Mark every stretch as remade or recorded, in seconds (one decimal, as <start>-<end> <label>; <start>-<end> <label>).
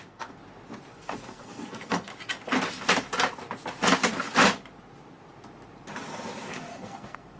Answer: 0.0-0.4 remade; 0.4-0.9 recorded; 0.9-2.1 remade; 2.1-6.5 recorded; 6.5-7.4 remade